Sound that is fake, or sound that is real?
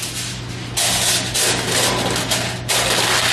real